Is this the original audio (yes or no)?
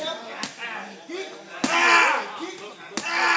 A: yes